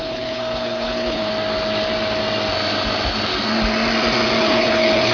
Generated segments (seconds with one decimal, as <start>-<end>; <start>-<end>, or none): 0.0-1.3; 4.4-5.1